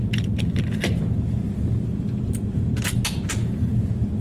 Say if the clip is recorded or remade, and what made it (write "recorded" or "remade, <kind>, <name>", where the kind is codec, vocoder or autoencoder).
recorded